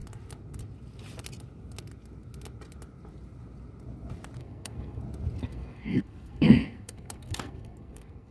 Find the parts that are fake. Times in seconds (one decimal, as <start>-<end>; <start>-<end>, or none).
4.4-5.0; 5.4-8.3